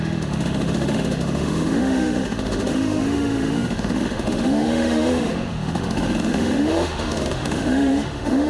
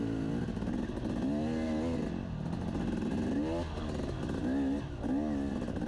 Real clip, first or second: second